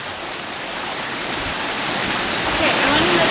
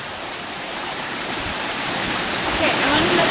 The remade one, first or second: second